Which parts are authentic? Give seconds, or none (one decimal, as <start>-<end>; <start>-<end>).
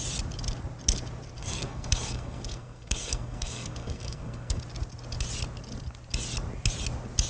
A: 0.0-1.4; 4.6-7.3